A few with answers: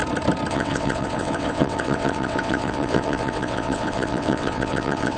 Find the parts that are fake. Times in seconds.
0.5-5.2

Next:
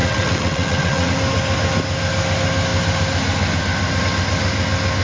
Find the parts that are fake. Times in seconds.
0.0-1.1

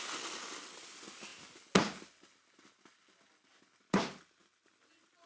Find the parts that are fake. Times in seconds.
none

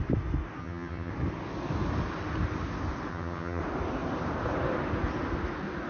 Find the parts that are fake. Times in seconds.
0.6-1.1; 3.1-3.6

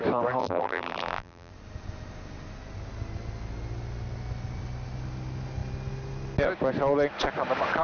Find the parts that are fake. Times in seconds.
0.4-1.5